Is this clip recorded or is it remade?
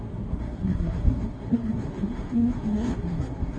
remade